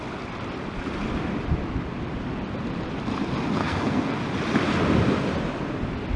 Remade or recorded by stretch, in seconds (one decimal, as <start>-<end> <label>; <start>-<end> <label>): 0.0-3.6 recorded; 3.6-4.2 remade; 4.2-6.2 recorded

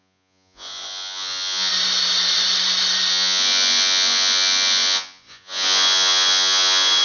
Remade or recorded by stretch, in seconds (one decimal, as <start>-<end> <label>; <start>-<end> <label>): 0.0-1.7 remade; 1.7-3.1 recorded; 3.1-7.0 remade

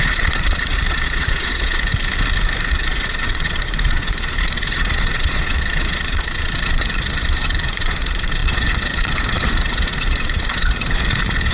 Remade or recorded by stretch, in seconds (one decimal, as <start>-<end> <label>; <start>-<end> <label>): 0.0-1.9 remade; 1.9-2.7 recorded; 2.7-11.5 remade

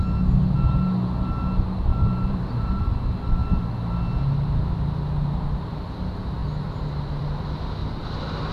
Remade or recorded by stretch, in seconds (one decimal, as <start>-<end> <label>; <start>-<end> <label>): 0.0-1.9 recorded; 1.9-2.8 remade; 2.8-7.8 recorded; 7.8-8.5 remade

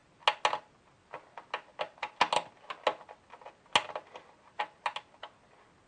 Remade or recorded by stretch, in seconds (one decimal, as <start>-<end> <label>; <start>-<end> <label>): 0.0-5.9 recorded

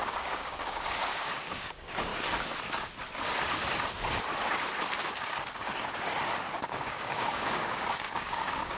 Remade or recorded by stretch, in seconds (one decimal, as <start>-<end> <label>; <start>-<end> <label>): 0.0-2.1 remade; 2.1-6.6 recorded; 6.6-8.8 remade